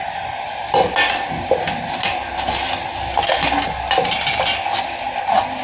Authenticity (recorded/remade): recorded